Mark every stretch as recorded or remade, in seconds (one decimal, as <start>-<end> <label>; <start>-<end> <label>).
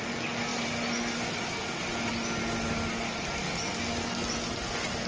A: 0.0-5.1 recorded